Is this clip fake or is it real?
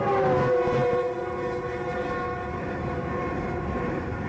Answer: fake